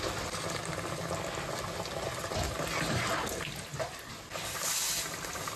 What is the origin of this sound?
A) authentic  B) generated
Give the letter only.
A